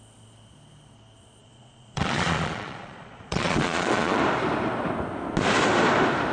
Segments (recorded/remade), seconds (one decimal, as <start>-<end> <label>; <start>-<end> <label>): 0.0-1.4 recorded; 1.4-4.2 remade; 4.2-6.3 recorded